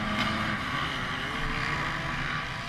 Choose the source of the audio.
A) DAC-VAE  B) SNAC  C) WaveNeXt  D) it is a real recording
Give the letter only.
D